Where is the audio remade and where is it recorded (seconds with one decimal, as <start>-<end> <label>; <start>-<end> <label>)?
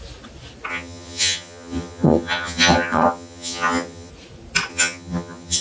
0.0-0.7 recorded; 0.7-4.1 remade; 4.1-4.7 recorded; 4.7-5.6 remade